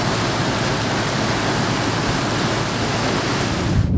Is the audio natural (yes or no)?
yes